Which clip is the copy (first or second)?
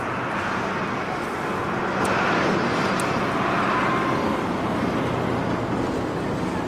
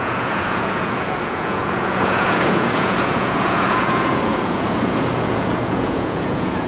second